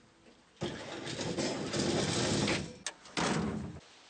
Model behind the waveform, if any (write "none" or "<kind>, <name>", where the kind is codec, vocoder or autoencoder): none